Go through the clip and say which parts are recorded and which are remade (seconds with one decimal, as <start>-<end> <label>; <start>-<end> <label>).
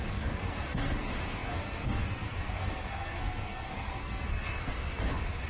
0.0-5.5 remade